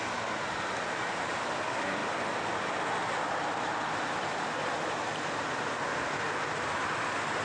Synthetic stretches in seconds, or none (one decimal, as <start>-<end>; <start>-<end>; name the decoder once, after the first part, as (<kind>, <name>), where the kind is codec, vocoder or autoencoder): none